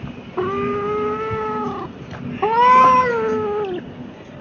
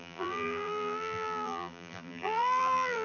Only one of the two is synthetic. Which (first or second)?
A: second